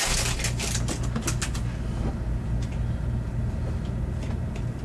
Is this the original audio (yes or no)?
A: yes